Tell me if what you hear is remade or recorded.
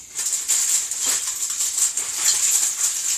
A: recorded